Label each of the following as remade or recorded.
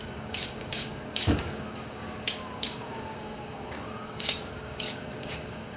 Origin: remade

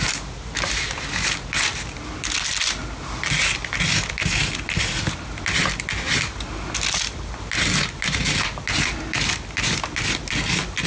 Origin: recorded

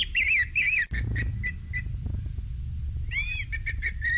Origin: recorded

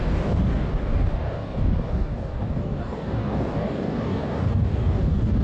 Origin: remade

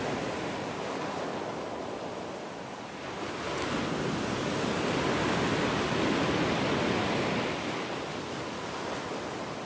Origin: recorded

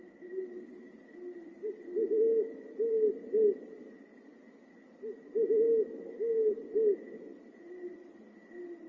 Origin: recorded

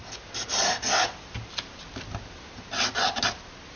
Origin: recorded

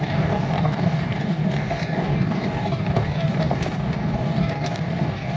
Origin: remade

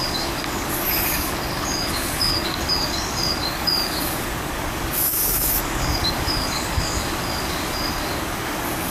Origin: remade